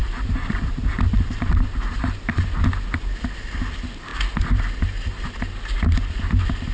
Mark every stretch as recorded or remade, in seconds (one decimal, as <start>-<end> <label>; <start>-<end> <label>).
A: 0.0-2.2 remade; 2.2-6.7 recorded